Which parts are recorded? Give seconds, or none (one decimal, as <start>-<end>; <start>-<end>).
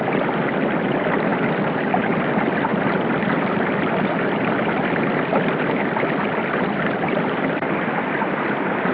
0.0-2.7; 6.2-8.9